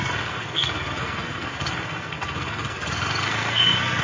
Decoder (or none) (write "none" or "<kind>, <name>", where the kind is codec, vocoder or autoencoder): codec, SNAC